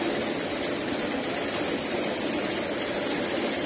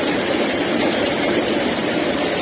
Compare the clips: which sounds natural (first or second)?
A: first